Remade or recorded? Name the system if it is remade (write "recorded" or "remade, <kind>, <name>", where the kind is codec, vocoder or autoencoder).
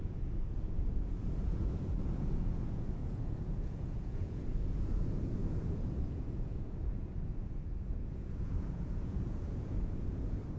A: remade, vocoder, Vocos